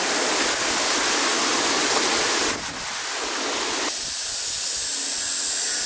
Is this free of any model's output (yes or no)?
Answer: yes